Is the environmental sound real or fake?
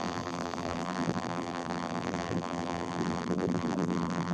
fake